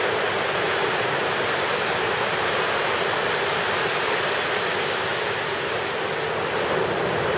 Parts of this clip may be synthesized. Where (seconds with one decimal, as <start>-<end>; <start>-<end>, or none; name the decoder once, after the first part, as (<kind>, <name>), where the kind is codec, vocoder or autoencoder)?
0.8-4.3 (vocoder, BigVGAN v2); 5.1-5.9